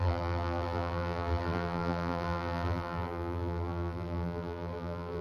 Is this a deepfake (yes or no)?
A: yes